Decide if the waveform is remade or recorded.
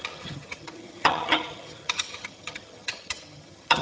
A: remade